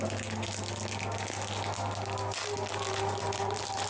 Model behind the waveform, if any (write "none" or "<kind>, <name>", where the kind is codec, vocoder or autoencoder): none